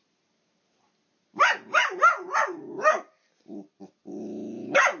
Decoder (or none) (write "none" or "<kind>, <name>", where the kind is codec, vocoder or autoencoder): none